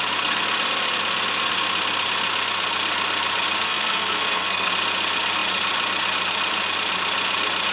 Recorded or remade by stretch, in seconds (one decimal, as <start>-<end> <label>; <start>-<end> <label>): 0.0-3.6 recorded; 3.6-4.7 remade; 4.7-7.7 recorded